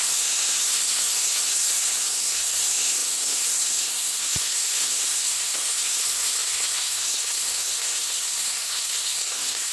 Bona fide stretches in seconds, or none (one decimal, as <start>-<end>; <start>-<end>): none